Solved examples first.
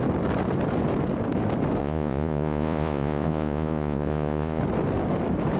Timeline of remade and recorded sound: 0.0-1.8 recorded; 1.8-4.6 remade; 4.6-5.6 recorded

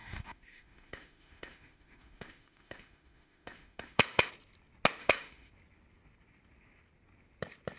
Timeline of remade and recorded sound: 0.0-4.3 remade; 4.3-5.0 recorded; 5.0-5.5 remade; 5.5-7.8 recorded

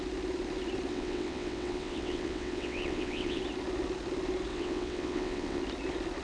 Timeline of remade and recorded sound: 0.0-0.9 recorded; 0.9-3.4 remade; 3.4-4.5 recorded; 4.5-5.6 remade; 5.6-6.2 recorded

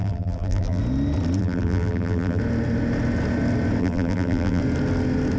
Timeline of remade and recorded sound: 0.0-0.8 remade; 0.8-1.4 recorded; 1.4-2.4 remade; 2.4-3.8 recorded; 3.8-4.6 remade; 4.6-5.4 recorded

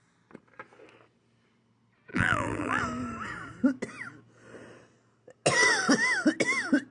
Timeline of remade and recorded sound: 0.0-2.1 recorded; 2.1-2.8 remade; 2.8-6.9 recorded

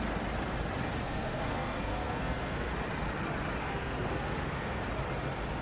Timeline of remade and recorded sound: 0.0-1.0 recorded; 1.0-2.7 remade; 2.7-3.6 recorded; 3.6-4.8 remade; 4.8-5.6 recorded

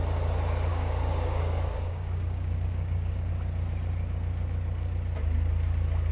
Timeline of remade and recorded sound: 0.0-0.7 recorded; 0.7-3.3 remade; 3.3-6.1 recorded